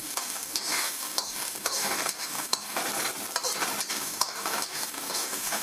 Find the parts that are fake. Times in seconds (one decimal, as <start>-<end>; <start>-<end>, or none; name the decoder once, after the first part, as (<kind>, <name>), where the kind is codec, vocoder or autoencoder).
0.0-2.8 (codec, DAC); 3.9-5.6